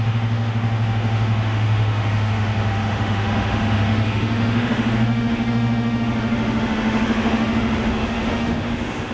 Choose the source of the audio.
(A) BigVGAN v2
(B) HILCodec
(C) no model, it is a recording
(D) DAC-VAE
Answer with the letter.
D